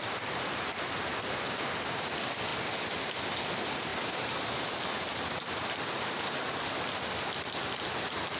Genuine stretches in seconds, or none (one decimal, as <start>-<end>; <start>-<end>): 0.0-8.4